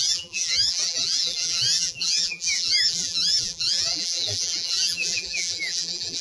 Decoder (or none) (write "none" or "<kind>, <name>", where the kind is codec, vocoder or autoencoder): vocoder, BigVGAN v2